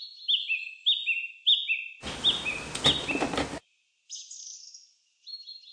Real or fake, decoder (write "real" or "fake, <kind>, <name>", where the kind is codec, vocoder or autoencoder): real